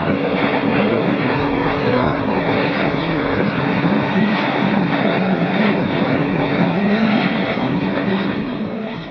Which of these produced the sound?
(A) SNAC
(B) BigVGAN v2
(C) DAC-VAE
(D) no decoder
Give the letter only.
A